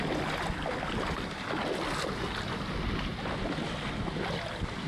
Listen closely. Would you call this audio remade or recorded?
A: recorded